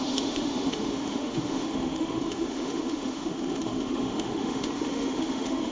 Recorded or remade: remade